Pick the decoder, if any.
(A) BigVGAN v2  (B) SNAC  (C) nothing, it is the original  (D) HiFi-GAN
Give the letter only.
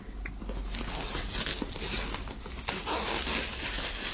C